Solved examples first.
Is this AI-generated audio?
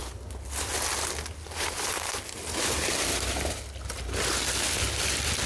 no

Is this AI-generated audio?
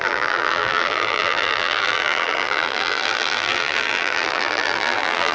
yes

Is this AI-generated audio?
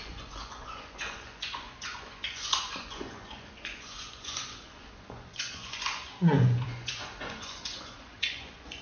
yes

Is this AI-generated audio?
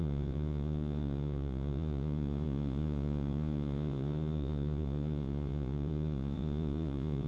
yes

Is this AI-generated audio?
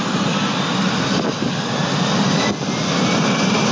no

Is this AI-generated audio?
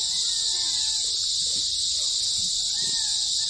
no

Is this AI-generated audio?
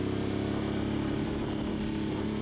no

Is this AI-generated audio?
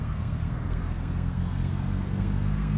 yes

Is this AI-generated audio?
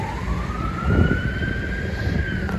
yes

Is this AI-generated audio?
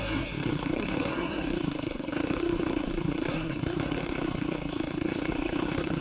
yes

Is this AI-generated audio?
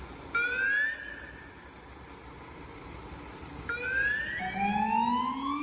no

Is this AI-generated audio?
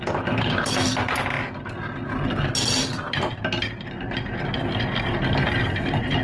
no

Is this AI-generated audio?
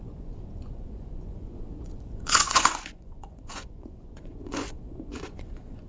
yes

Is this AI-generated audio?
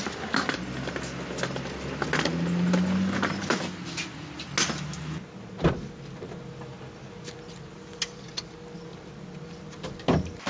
no